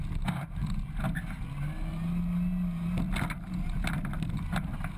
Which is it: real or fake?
real